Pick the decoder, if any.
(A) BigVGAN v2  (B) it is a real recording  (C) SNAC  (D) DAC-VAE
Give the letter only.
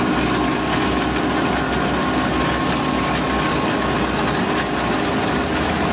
B